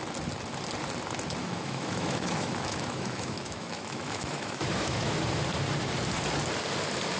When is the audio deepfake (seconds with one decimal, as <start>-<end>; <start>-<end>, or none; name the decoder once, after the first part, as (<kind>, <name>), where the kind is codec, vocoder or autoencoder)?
1.4-5.2 (autoencoder, DAC-VAE)